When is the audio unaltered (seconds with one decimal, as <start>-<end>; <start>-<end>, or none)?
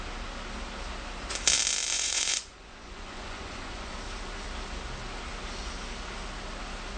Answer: 0.0-1.9; 3.9-7.0